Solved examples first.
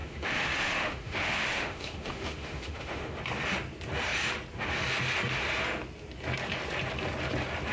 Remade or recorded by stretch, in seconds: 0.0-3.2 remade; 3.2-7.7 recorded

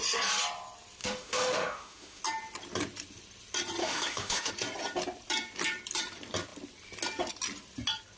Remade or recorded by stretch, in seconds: 0.0-1.0 recorded; 1.0-2.2 remade; 2.2-3.8 recorded; 3.8-4.5 remade; 4.5-8.2 recorded

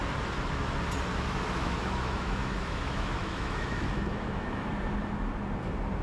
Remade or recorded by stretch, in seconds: 0.0-1.1 recorded; 1.1-4.7 remade; 4.7-6.0 recorded

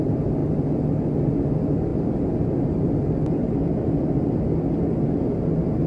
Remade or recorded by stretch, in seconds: 0.0-5.9 recorded

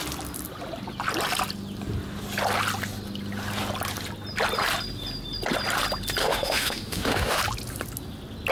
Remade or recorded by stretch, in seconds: 0.0-6.2 recorded; 6.2-7.4 remade; 7.4-8.5 recorded